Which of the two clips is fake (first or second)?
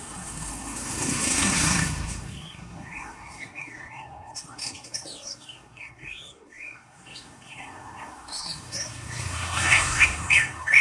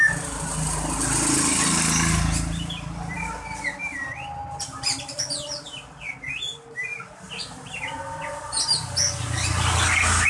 first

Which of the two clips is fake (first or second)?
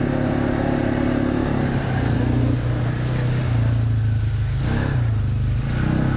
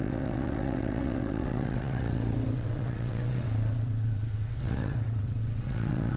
second